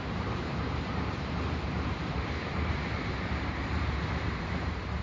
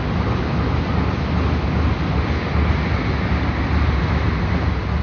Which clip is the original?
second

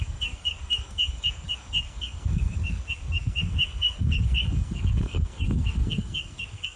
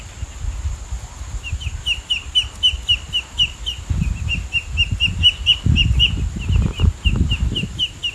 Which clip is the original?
second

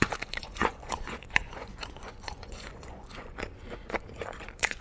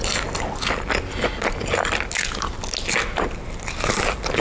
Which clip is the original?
second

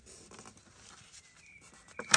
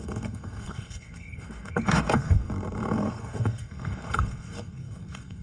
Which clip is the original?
first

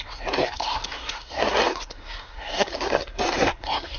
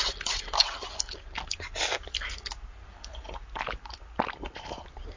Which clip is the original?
second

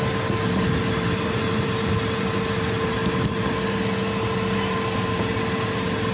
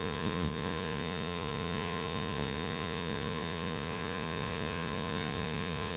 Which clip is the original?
first